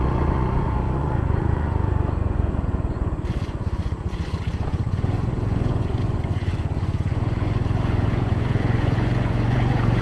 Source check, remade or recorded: remade